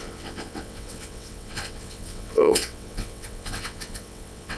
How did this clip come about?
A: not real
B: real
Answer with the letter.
A